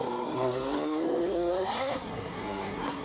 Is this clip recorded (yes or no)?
no